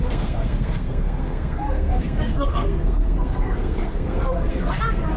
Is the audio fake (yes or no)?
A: yes